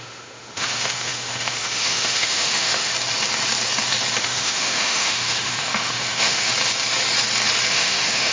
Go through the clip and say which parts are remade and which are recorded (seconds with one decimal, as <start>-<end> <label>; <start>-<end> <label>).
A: 0.0-2.9 remade; 2.9-4.2 recorded; 4.2-6.5 remade; 6.5-7.7 recorded; 7.7-8.3 remade